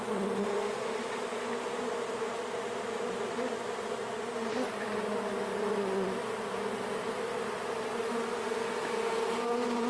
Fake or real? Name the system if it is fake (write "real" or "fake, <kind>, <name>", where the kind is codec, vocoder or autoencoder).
real